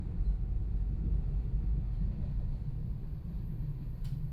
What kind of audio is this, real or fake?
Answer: real